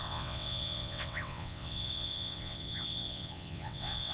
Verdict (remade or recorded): remade